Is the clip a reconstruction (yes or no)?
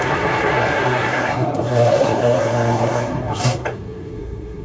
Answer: yes